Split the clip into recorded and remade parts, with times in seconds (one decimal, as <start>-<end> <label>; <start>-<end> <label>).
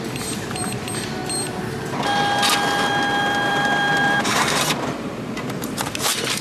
0.0-1.2 remade; 1.2-3.5 recorded; 3.5-6.4 remade